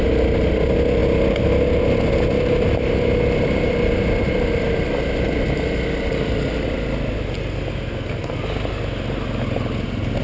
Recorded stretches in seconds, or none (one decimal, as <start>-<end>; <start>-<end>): 0.0-10.2